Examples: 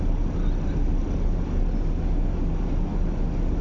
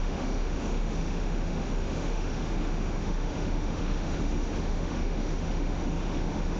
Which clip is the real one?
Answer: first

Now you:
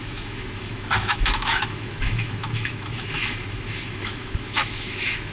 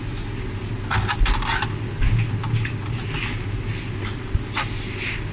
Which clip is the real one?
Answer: second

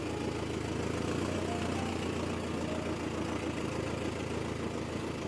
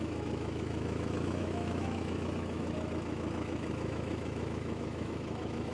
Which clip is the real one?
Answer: first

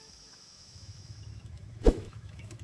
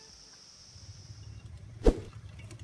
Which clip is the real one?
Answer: second